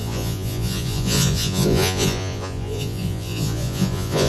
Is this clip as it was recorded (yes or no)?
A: no